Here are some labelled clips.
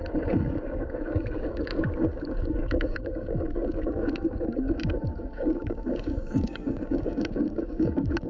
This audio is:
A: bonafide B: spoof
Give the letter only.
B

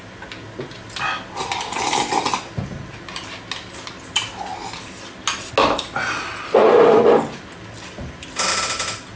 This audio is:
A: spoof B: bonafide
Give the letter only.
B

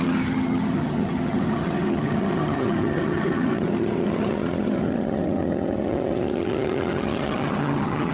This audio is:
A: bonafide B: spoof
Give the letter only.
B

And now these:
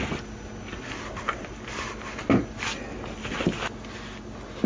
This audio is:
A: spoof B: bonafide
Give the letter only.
B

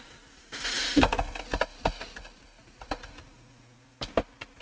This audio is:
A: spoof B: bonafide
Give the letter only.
B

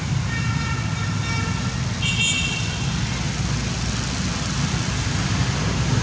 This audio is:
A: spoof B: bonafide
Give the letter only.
B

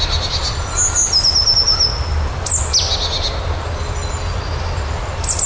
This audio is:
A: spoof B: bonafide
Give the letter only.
B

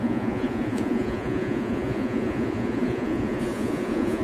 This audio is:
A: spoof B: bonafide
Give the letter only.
A